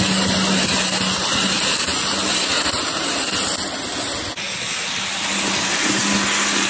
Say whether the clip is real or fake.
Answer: real